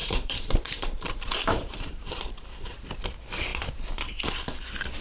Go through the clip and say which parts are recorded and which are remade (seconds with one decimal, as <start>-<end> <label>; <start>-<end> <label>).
0.0-3.0 remade; 3.0-5.0 recorded